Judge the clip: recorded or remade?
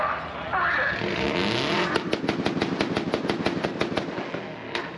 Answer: recorded